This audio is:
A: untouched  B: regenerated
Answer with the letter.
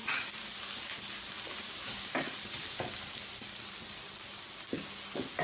A